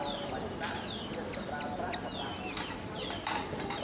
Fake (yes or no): no